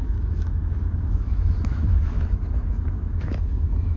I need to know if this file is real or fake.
fake